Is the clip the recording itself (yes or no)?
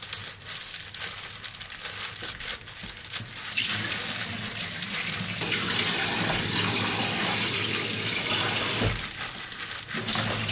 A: yes